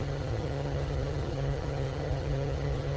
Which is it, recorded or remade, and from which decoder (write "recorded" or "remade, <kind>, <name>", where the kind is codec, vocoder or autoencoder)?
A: remade, vocoder, HiFi-GAN